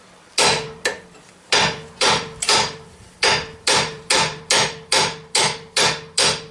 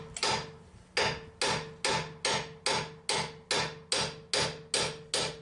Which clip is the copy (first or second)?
first